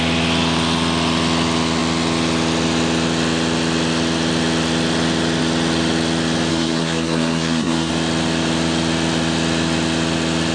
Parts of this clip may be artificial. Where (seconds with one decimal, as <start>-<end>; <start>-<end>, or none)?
6.5-7.9